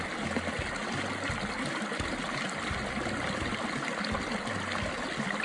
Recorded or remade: recorded